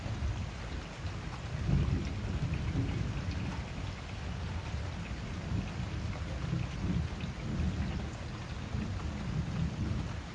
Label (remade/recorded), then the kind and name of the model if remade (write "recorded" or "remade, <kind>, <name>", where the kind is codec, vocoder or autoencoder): recorded